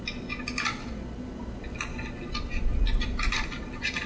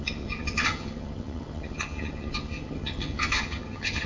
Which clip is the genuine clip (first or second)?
first